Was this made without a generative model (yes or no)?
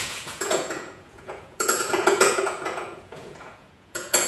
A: no